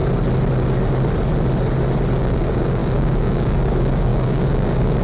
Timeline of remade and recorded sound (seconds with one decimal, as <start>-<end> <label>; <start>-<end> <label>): 0.0-2.1 recorded; 2.1-5.0 remade